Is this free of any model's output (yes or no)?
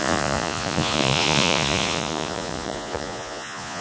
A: no